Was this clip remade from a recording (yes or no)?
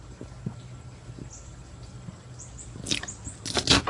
no